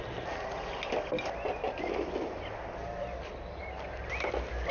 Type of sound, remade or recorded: recorded